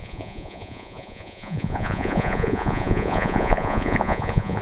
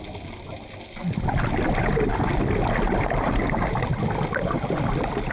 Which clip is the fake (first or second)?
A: first